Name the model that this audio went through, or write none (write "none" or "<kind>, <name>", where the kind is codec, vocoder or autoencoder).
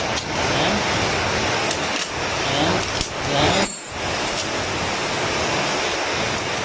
none